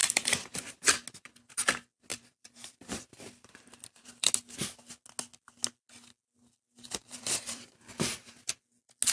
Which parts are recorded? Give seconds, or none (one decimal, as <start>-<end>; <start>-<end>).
0.6-2.1; 4.3-7.0; 8.3-9.1